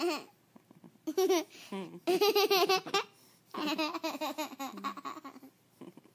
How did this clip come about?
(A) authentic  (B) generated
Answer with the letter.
A